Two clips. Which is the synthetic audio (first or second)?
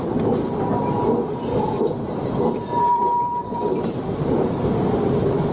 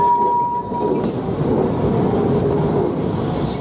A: first